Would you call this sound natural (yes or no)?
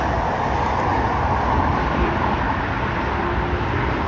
yes